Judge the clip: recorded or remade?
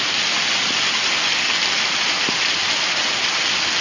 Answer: recorded